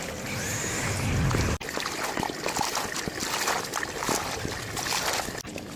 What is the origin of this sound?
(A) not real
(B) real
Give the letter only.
B